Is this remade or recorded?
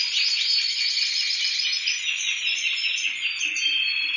recorded